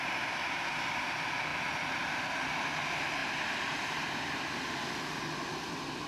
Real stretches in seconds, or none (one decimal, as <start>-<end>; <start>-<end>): 0.0-3.2; 3.9-6.1